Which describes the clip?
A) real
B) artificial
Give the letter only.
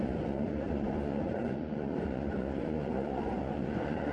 B